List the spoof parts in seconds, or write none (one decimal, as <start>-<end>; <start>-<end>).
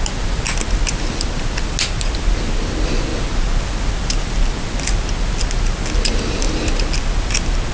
none